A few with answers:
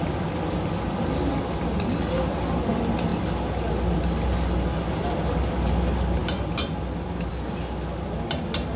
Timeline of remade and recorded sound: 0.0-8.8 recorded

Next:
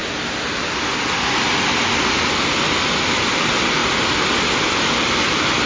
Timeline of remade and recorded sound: 0.0-5.7 recorded

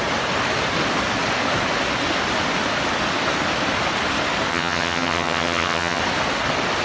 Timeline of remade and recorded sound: 0.0-4.5 recorded; 4.5-6.0 remade; 6.0-6.8 recorded